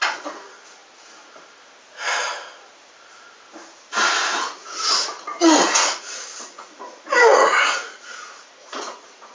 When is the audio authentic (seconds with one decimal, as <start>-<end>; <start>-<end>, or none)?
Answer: 0.8-4.2